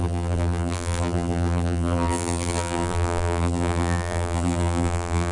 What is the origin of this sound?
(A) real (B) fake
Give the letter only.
B